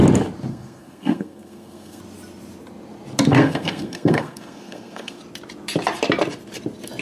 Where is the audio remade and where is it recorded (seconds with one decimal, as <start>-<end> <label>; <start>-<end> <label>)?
0.0-0.5 recorded; 0.5-2.0 remade; 2.0-3.3 recorded; 3.3-5.2 remade; 5.2-7.0 recorded